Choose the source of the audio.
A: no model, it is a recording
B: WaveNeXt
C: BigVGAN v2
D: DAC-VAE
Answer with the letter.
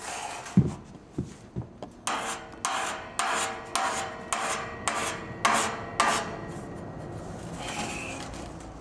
A